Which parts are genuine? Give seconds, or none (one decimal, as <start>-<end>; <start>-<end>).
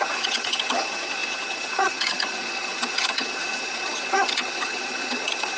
none